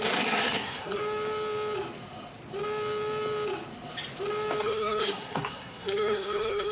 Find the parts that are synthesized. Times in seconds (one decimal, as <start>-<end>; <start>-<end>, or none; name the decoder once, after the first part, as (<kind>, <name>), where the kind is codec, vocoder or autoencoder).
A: 0.0-1.0 (codec, SNAC); 4.6-6.7